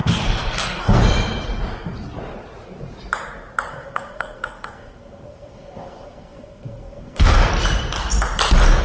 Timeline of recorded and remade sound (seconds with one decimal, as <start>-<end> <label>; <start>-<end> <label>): 0.0-1.0 remade; 1.0-3.7 recorded; 3.7-7.5 remade; 7.5-8.8 recorded

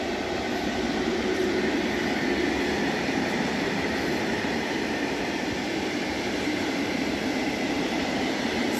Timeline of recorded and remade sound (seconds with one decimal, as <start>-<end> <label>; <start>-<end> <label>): 0.0-1.4 remade; 1.4-2.7 recorded; 2.7-8.8 remade